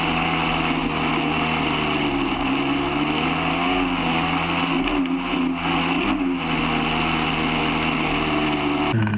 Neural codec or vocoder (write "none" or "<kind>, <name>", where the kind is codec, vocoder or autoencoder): none